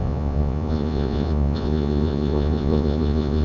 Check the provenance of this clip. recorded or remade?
remade